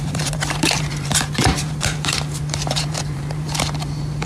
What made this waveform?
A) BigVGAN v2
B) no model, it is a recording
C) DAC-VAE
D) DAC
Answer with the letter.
A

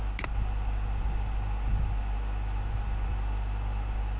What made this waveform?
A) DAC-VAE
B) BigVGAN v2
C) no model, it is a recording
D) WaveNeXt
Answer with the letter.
C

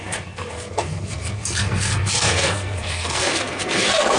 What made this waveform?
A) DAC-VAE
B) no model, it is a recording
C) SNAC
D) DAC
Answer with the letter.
C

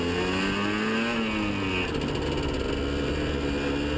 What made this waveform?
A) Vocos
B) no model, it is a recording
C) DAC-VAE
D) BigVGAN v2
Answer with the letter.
B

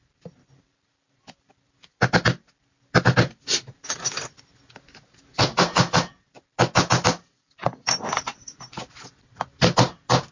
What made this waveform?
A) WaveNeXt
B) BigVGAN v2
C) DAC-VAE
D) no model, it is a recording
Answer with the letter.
D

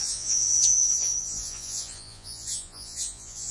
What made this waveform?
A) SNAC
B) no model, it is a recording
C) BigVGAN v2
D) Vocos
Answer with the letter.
D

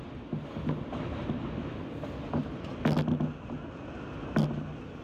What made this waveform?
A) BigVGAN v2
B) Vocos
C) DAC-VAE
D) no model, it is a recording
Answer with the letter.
D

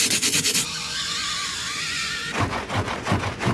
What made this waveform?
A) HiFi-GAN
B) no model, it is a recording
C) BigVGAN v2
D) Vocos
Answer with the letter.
D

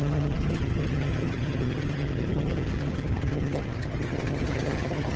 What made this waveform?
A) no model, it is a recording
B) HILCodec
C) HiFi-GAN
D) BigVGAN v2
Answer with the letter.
C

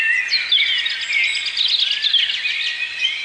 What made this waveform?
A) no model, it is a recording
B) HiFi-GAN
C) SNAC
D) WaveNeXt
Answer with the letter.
A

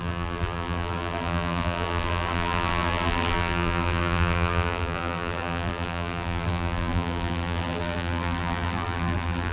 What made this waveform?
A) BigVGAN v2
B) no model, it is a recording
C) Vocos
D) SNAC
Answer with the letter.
A